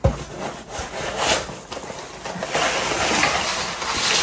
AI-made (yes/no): no